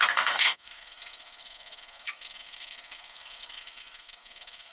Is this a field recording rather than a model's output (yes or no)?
no